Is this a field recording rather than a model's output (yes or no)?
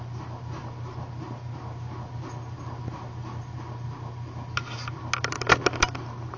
yes